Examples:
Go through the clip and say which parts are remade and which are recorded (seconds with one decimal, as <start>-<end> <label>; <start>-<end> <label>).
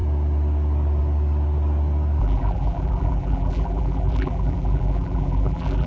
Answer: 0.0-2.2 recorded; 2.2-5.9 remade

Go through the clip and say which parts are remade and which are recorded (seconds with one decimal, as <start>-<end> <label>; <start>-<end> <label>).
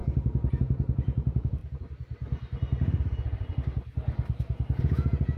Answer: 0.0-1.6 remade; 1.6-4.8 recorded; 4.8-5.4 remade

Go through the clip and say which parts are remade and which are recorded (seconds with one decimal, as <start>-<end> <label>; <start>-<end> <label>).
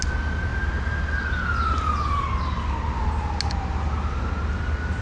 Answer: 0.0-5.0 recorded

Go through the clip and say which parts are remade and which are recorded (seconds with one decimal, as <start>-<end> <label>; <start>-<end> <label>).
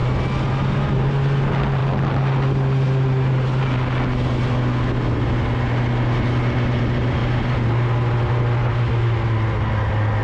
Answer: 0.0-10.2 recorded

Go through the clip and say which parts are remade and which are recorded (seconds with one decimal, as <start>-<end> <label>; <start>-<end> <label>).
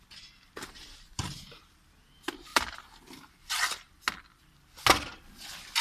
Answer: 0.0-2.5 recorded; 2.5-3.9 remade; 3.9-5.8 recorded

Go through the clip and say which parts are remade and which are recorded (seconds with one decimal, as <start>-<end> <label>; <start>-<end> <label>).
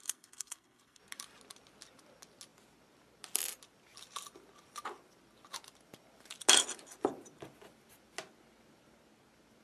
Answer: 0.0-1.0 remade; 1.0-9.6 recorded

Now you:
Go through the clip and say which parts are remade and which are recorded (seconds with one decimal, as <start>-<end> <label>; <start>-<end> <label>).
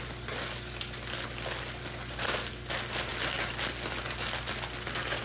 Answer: 0.0-5.2 recorded